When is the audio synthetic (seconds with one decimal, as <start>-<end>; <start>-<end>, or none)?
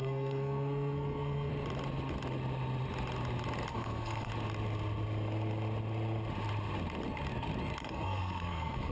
0.0-1.5; 3.7-4.3; 7.8-8.9